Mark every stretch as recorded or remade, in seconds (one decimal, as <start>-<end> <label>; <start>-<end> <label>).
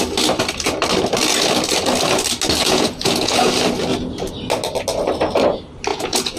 0.0-2.6 recorded; 2.6-3.5 remade; 3.5-5.9 recorded; 5.9-6.4 remade